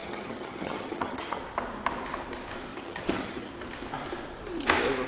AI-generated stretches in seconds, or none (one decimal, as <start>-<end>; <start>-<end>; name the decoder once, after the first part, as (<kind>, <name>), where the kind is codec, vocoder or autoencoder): 0.0-1.4 (vocoder, HiFi-GAN); 2.7-3.5